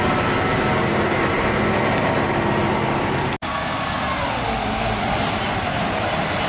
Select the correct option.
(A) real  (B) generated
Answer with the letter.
A